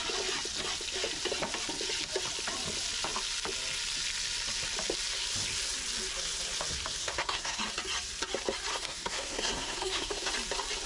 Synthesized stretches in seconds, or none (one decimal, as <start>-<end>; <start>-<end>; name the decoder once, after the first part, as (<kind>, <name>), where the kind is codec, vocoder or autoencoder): 7.0-7.6 (codec, SNAC); 8.7-10.3